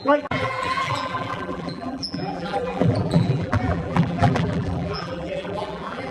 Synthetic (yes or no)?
yes